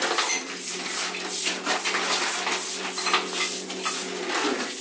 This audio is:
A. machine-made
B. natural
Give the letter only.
B